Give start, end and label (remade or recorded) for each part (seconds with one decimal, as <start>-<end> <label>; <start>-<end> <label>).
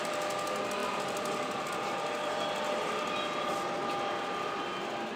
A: 0.0-5.2 recorded